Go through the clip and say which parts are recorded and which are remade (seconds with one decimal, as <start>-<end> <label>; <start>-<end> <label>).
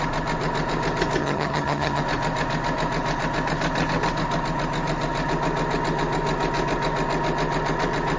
0.0-1.2 recorded; 1.2-2.0 remade; 2.0-8.2 recorded